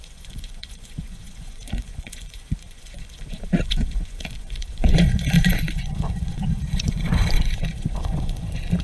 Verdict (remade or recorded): remade